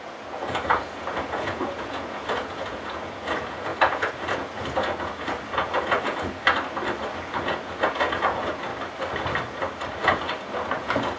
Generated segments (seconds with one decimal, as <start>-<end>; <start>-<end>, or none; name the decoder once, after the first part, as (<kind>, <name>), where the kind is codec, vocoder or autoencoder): 0.0-6.4 (vocoder, Vocos); 7.2-8.7; 10.0-11.2